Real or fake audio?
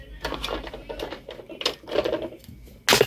real